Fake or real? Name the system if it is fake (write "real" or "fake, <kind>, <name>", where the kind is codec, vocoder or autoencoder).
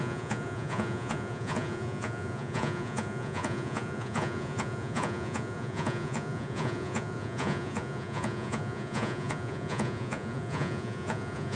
fake, vocoder, Vocos